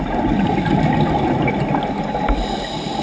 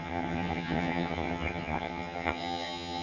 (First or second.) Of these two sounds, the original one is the first